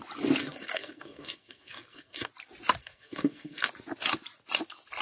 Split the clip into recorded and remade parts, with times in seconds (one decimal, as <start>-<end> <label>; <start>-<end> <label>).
0.0-0.4 recorded; 0.4-2.3 remade; 2.3-2.8 recorded; 2.8-3.7 remade; 3.7-5.0 recorded